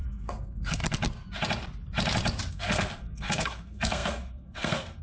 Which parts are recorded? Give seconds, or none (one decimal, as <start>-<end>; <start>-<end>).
0.8-2.5